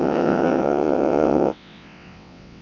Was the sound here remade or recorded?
remade